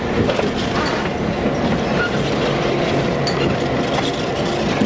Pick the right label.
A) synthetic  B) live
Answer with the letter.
B